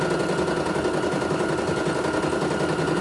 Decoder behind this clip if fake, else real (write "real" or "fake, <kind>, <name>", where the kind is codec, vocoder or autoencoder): real